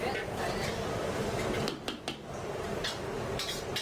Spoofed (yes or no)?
no